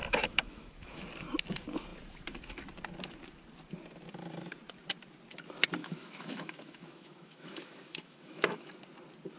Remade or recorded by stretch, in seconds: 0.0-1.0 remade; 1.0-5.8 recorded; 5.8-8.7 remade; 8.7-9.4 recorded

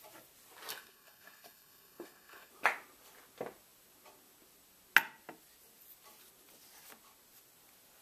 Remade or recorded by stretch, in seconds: 0.0-0.7 recorded; 0.7-2.5 remade; 2.5-8.0 recorded

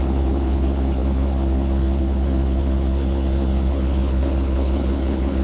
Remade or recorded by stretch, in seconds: 0.0-5.4 remade

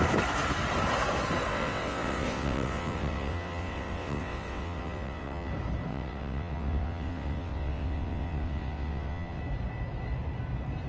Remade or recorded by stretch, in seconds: 0.0-1.5 recorded; 1.5-5.5 remade; 5.5-5.9 recorded; 5.9-9.4 remade; 9.4-10.9 recorded

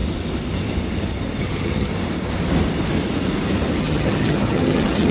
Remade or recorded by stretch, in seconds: 0.0-1.4 recorded; 1.4-1.9 remade; 1.9-3.8 recorded; 3.8-5.1 remade

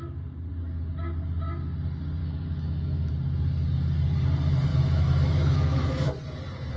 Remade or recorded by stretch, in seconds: 0.0-2.2 recorded; 2.2-3.1 remade; 3.1-4.7 recorded; 4.7-6.1 remade; 6.1-6.8 recorded